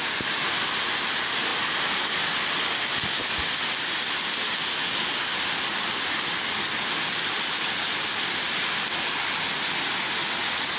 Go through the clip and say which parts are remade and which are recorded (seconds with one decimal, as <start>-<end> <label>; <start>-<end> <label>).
0.0-5.3 recorded; 5.3-8.6 remade; 8.6-10.8 recorded